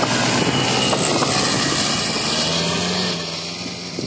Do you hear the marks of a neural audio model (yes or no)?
no